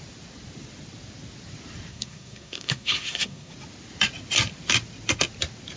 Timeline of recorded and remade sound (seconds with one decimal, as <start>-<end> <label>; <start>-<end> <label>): 0.0-1.9 recorded; 1.9-3.5 remade; 3.5-5.8 recorded